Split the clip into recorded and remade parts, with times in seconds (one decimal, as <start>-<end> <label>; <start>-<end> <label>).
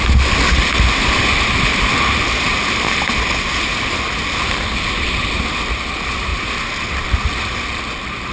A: 0.0-1.7 recorded; 1.7-2.2 remade; 2.2-3.7 recorded; 3.7-5.1 remade; 5.1-6.3 recorded; 6.3-6.9 remade; 6.9-8.3 recorded